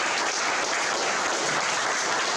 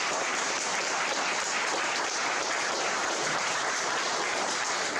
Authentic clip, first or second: first